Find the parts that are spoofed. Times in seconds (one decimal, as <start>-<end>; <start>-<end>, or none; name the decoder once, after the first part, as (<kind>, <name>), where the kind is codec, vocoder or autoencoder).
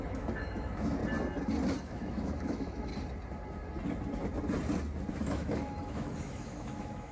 0.0-1.0 (autoencoder, DAC-VAE); 1.8-2.9; 5.1-7.1